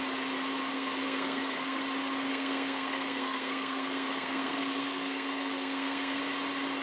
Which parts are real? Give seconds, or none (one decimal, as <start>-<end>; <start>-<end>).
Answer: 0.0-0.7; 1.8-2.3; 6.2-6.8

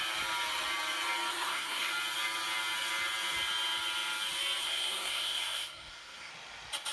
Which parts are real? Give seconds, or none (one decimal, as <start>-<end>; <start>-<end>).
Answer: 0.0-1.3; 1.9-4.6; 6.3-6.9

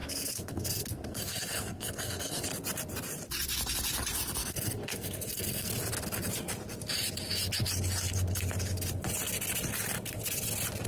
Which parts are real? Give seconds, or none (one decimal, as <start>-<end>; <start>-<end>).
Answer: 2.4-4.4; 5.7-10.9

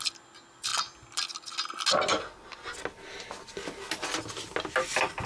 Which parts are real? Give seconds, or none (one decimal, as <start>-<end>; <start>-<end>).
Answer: 0.0-5.3

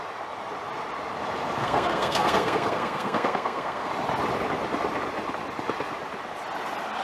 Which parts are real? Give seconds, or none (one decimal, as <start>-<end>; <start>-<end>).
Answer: 0.0-1.6; 3.9-7.0

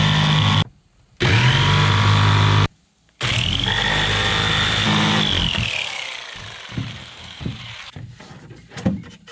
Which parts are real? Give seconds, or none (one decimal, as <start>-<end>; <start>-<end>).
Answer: 0.0-6.9; 7.4-9.3

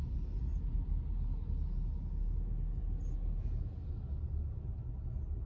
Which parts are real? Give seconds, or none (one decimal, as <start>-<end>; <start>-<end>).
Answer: 0.0-5.5